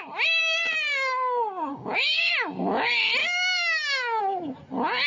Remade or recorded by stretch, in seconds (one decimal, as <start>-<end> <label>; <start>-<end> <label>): 0.0-1.7 recorded; 1.7-2.3 remade; 2.3-3.2 recorded; 3.2-4.2 remade; 4.2-5.1 recorded